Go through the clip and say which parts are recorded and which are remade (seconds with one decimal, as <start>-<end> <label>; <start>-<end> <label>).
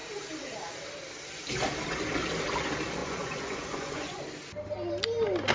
0.0-3.0 recorded; 3.0-4.2 remade; 4.2-5.5 recorded